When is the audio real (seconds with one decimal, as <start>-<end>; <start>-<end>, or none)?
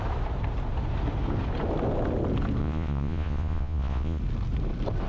0.0-2.6; 4.2-5.1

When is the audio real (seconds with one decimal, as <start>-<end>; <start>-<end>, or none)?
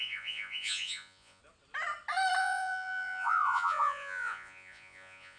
1.4-2.4